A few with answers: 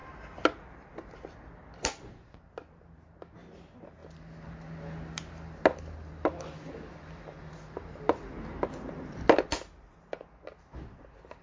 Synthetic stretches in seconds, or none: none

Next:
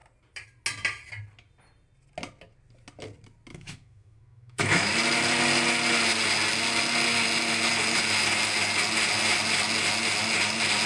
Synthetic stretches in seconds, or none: 3.5-4.9 (autoencoder, DAC-VAE)